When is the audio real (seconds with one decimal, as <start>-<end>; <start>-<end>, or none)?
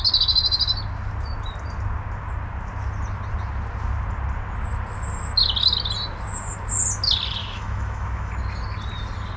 0.0-7.4; 8.3-9.4